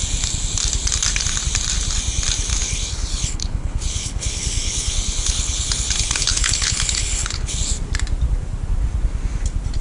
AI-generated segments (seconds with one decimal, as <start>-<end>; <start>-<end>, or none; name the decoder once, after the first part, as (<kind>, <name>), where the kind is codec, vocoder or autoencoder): 2.5-7.6 (codec, HILCodec)